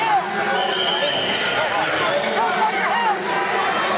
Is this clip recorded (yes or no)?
yes